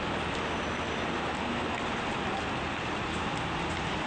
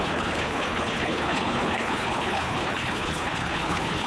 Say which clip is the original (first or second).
first